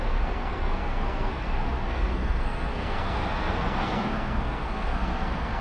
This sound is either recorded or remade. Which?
remade